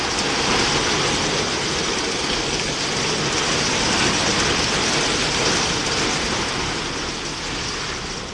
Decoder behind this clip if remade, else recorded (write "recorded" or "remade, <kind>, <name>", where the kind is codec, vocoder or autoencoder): recorded